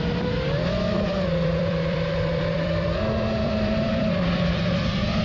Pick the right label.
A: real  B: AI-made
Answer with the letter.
B